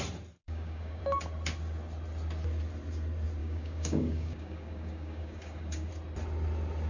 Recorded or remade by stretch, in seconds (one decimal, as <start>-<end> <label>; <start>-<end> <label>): 0.0-0.4 recorded; 0.4-1.0 remade; 1.0-3.4 recorded; 3.4-5.9 remade; 5.9-6.9 recorded